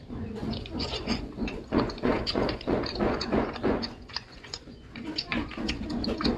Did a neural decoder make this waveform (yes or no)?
yes